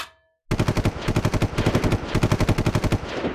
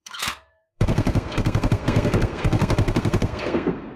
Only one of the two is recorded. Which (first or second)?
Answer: first